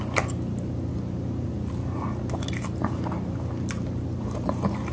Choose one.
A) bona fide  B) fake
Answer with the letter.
A